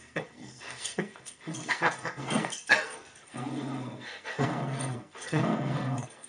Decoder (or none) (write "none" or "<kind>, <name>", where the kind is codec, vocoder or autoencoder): codec, SNAC